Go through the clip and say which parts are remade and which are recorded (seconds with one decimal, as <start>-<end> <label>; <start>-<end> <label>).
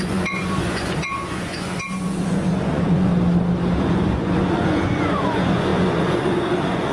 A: 0.0-3.1 remade; 3.1-3.8 recorded; 3.8-6.9 remade